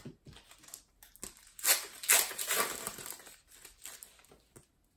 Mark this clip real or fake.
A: real